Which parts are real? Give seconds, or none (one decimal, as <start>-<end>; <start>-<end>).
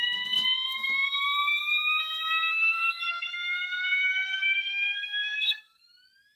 0.0-2.5; 5.8-6.4